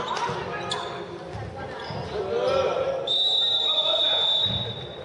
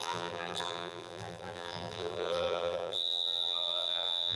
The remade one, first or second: second